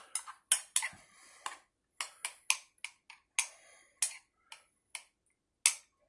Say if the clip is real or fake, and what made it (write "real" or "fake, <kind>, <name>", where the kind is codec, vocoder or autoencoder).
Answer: real